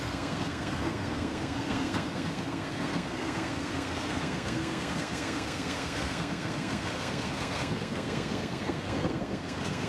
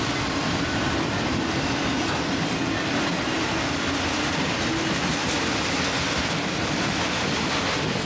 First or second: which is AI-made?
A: first